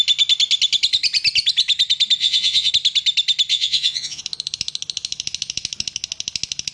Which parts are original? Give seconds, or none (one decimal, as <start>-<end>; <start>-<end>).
0.0-2.2; 2.7-3.5; 4.2-6.7